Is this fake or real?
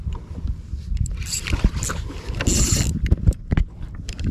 real